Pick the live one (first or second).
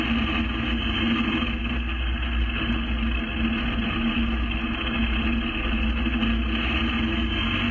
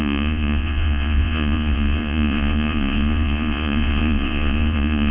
first